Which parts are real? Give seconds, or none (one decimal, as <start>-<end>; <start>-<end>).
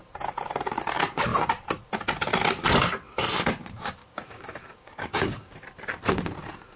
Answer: 0.0-4.0; 5.6-6.8